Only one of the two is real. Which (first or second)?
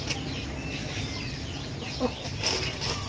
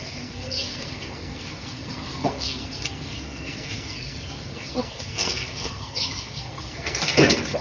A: first